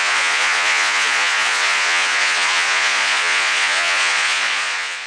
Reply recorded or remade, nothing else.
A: remade